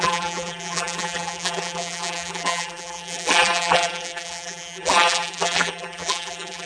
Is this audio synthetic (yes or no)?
yes